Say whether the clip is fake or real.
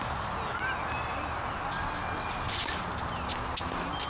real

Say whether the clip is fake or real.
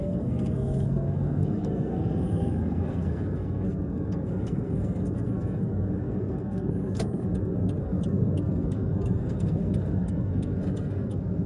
fake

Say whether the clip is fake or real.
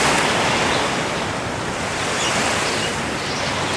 real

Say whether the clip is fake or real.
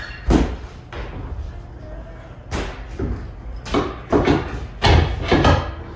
real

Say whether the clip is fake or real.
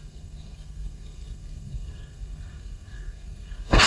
fake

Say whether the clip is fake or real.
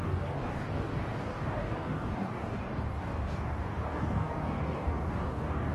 fake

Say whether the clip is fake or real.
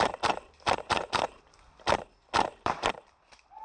fake